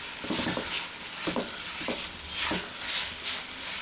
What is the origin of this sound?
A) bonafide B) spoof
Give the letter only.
A